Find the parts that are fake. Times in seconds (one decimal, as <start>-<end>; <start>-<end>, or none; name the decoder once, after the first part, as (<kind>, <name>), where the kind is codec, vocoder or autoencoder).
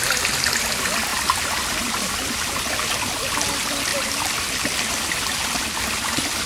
none